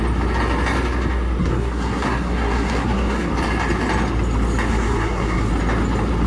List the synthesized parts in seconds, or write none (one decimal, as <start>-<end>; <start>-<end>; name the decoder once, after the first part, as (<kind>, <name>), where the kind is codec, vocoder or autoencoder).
1.4-3.3 (codec, SNAC); 4.7-5.5